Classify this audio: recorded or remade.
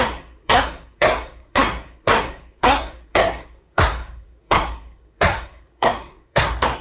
remade